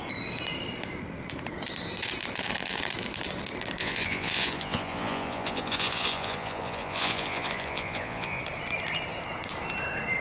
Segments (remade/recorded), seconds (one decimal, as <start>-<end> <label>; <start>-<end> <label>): 0.0-3.8 recorded; 3.8-8.4 remade; 8.4-10.2 recorded